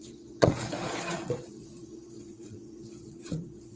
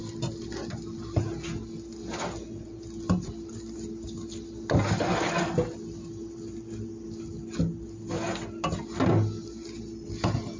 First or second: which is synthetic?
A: first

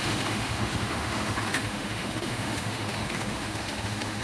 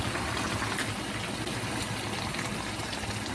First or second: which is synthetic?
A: first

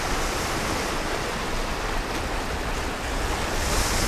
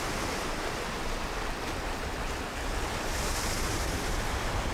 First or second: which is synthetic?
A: second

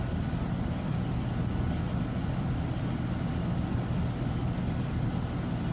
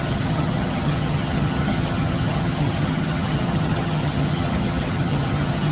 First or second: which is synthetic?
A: second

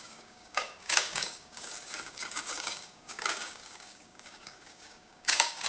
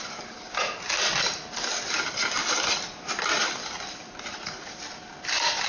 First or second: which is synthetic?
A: first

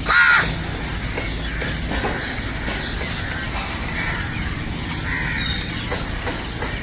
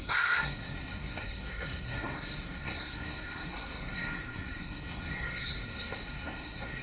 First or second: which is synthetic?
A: second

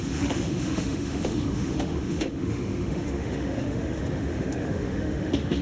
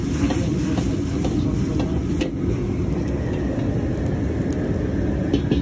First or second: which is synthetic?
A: first